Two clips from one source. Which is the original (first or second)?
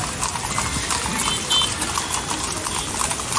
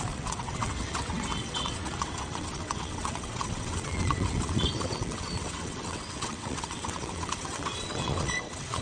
first